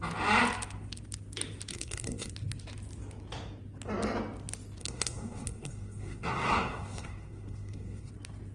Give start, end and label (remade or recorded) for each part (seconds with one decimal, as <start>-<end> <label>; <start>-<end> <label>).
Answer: 0.0-1.7 recorded; 1.7-2.3 remade; 2.3-4.8 recorded; 4.8-8.1 remade; 8.1-8.5 recorded